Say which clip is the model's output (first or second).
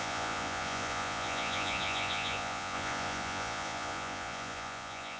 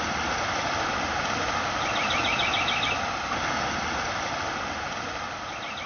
first